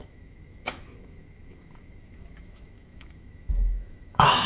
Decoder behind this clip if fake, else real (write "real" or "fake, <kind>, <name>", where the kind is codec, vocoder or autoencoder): fake, autoencoder, DAC-VAE